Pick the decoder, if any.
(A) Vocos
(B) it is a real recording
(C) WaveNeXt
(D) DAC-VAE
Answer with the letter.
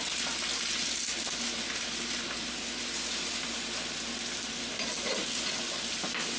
B